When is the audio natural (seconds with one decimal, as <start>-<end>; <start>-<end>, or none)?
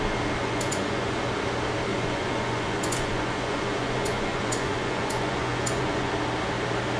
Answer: 0.0-0.4; 1.2-1.9; 6.1-7.0